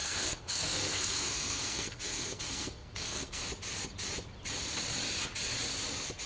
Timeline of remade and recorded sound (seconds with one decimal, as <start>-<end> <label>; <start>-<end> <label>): 0.0-3.5 remade; 3.5-6.3 recorded